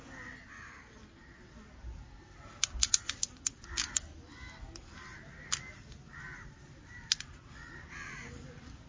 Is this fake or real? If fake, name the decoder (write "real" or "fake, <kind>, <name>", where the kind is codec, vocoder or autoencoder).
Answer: real